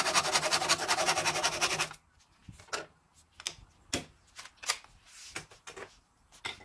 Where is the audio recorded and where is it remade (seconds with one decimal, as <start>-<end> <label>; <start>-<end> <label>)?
0.0-6.6 recorded